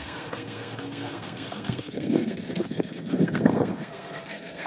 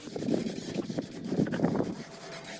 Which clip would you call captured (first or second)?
second